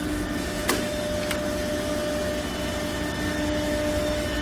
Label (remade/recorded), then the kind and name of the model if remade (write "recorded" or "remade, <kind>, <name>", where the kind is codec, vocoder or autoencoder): recorded